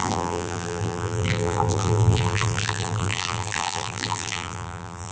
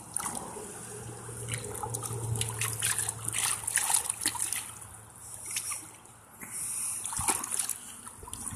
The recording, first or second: second